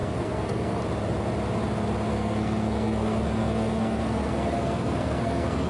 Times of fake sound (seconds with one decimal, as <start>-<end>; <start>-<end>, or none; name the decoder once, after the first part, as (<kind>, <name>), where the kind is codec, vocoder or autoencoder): 0.0-0.8 (codec, SNAC); 2.1-5.7